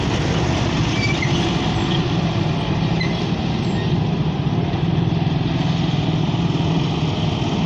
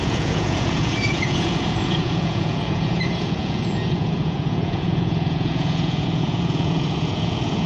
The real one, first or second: first